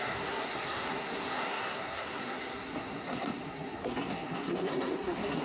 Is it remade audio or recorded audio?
remade